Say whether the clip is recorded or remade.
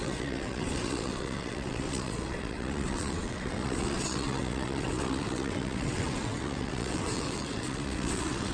remade